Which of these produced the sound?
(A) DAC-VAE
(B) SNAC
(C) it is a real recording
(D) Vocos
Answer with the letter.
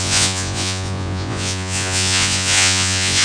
D